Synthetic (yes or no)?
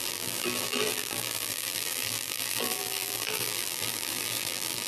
yes